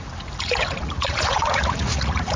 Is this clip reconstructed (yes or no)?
yes